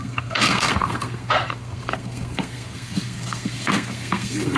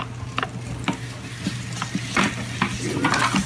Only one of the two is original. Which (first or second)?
second